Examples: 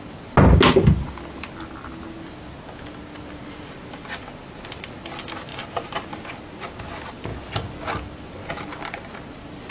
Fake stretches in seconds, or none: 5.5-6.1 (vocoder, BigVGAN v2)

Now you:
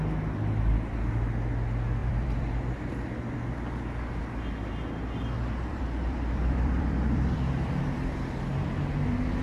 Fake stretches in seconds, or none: 2.0-2.9 (vocoder, BigVGAN v2); 5.7-8.2

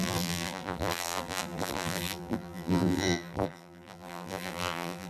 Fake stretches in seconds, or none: 0.0-5.1 (vocoder, BigVGAN v2)

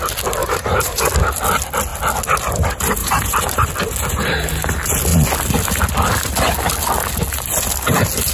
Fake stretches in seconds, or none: 0.4-1.1 (vocoder, BigVGAN v2); 3.0-3.7

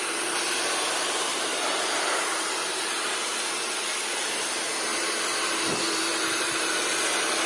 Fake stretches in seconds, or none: 1.5-3.1 (vocoder, BigVGAN v2); 4.9-6.8

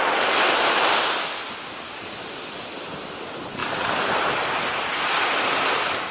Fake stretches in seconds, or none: 3.6-6.1 (vocoder, BigVGAN v2)

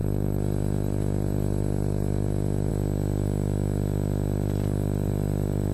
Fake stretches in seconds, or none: 0.0-2.7 (vocoder, BigVGAN v2)

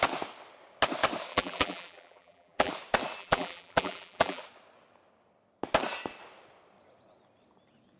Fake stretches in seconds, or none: 1.3-2.7 (vocoder, BigVGAN v2); 3.2-4.4